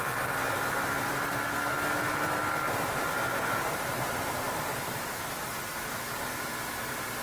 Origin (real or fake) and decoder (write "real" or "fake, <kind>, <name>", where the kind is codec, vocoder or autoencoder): real